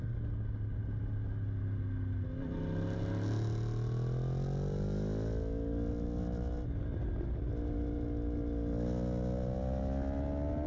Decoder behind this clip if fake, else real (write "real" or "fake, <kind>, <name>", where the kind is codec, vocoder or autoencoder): real